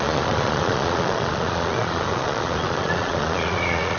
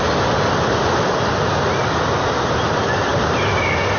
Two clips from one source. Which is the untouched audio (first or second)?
second